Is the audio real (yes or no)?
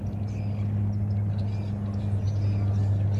yes